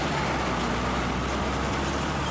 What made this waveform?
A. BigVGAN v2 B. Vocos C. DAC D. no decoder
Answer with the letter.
D